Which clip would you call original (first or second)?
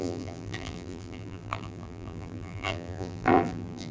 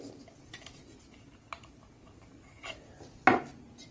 second